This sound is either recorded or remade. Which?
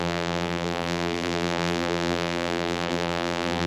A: remade